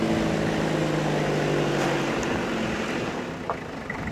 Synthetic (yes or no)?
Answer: no